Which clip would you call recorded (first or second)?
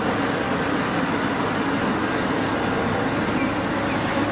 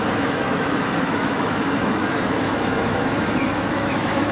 first